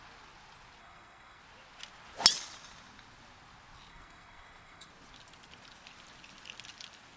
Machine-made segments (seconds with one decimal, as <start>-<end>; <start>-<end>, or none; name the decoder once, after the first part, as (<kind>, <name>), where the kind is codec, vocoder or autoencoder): 0.8-1.4 (codec, SNAC); 3.9-4.9